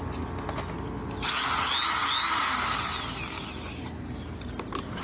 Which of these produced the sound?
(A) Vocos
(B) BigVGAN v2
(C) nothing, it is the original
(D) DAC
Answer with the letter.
C